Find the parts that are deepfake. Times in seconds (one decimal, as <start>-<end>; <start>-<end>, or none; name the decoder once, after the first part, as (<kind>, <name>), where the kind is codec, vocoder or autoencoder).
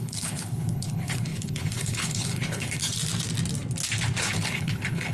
0.0-2.9 (codec, HILCodec); 4.2-5.1